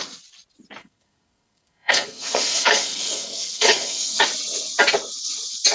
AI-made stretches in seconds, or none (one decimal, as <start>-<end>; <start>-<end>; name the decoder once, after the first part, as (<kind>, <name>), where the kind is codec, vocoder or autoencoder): 0.8-4.2 (codec, SNAC)